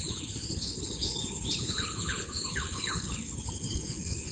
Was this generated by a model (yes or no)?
yes